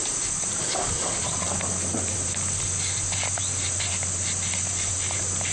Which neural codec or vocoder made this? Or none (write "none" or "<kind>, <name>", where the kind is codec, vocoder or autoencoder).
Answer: none